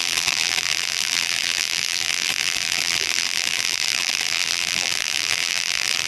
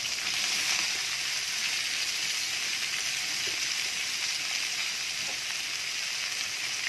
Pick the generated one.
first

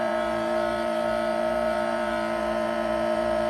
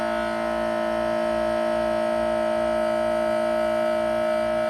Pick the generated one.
first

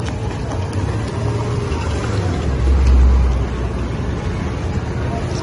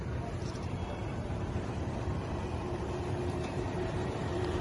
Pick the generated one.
second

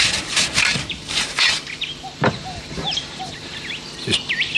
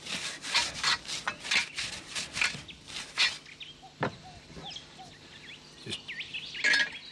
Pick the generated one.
first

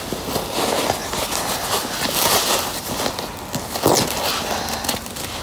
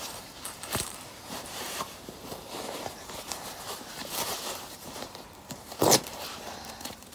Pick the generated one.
second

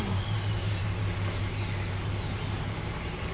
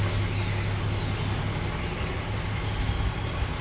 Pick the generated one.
first